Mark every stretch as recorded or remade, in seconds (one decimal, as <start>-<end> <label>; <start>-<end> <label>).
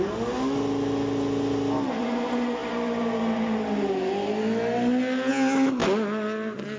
0.0-6.8 recorded